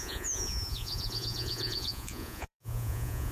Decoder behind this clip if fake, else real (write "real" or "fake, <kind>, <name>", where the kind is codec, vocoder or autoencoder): fake, vocoder, Vocos